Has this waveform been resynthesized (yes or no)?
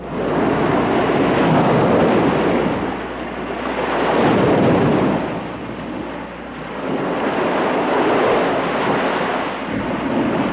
no